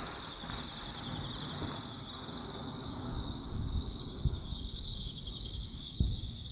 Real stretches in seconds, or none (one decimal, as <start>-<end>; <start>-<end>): 0.0-2.4